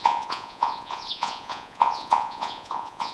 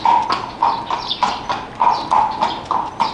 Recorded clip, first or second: second